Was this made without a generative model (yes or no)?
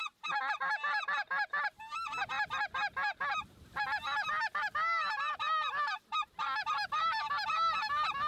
yes